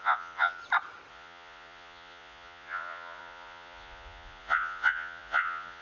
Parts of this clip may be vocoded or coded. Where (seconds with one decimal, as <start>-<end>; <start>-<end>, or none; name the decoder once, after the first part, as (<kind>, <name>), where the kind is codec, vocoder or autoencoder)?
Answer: 0.0-0.6 (vocoder, Vocos); 1.1-5.8